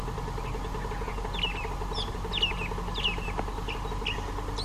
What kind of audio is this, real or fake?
real